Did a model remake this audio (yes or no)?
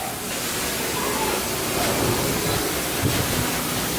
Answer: no